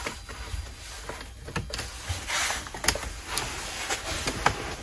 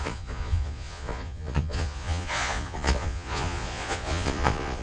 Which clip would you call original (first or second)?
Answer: first